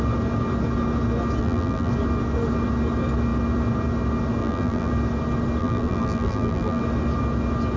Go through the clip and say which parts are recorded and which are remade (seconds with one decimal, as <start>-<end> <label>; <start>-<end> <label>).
0.0-1.4 recorded; 1.4-1.9 remade; 1.9-4.4 recorded; 4.4-4.9 remade; 4.9-5.6 recorded; 5.6-6.8 remade; 6.8-7.8 recorded